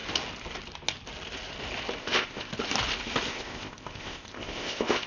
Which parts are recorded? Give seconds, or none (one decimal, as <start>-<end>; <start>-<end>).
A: 0.0-2.0; 2.5-3.3